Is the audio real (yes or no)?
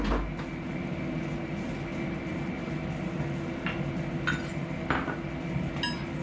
yes